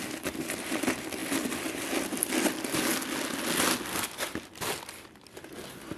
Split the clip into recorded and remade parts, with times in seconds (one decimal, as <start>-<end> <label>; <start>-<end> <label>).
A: 0.0-6.0 recorded